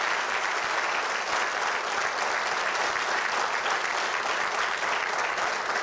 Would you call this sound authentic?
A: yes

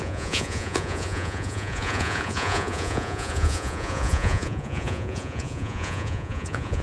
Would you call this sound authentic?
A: no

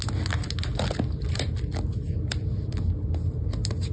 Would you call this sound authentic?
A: yes